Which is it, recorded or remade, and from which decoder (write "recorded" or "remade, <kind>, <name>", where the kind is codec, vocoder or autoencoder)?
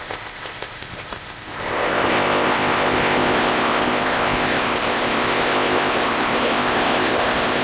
remade, codec, ZipCodec